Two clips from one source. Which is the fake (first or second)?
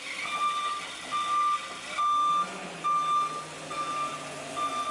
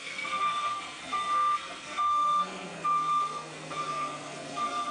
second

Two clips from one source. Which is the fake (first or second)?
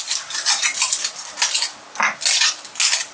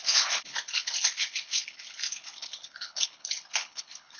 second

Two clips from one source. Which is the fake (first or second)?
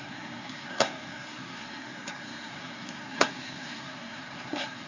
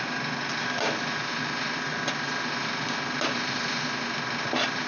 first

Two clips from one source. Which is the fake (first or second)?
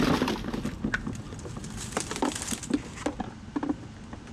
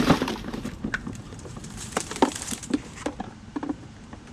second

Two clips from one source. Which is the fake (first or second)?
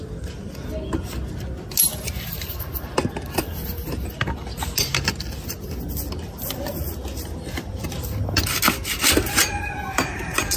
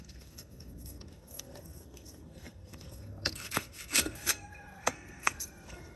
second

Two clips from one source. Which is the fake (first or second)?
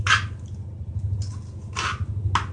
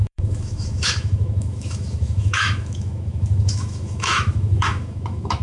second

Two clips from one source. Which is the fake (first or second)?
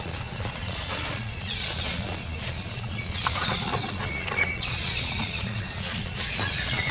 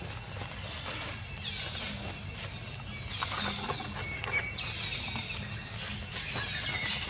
first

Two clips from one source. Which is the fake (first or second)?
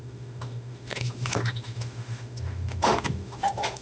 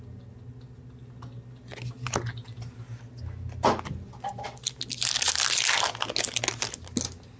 first